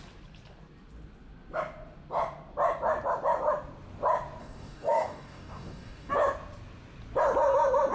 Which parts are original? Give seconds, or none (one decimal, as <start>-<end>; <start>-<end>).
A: 0.0-4.4; 6.1-7.9